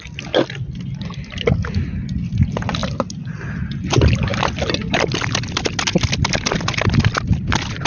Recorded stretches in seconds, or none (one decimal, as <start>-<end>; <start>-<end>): 0.0-2.8; 3.4-7.9